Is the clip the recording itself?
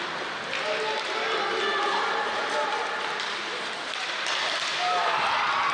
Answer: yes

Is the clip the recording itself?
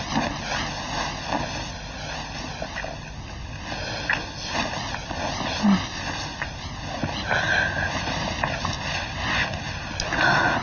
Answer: yes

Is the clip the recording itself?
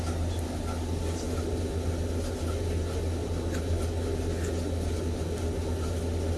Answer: yes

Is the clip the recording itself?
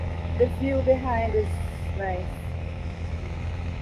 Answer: no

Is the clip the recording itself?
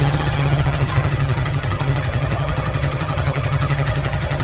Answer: no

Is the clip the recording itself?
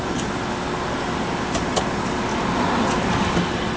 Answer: yes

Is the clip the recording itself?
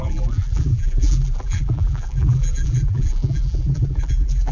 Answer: no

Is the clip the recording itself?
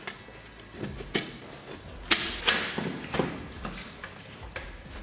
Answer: yes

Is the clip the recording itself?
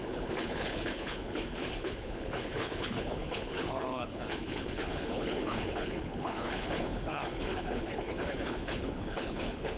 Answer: no